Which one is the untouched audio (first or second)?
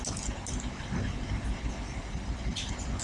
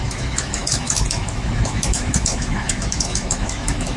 first